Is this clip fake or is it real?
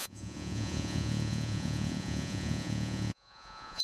fake